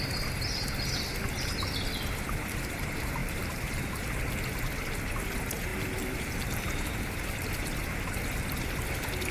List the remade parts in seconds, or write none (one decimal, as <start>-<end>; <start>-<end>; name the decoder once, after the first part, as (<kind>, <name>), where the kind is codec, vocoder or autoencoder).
3.2-4.0 (vocoder, BigVGAN v2); 5.7-7.5